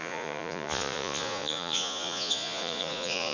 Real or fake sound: fake